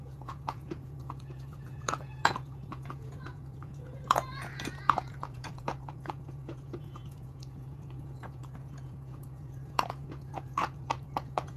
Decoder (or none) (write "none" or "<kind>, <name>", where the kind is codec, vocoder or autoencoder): vocoder, Vocos